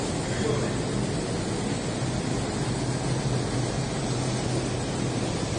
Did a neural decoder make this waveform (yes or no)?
no